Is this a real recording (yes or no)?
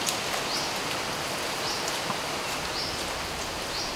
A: yes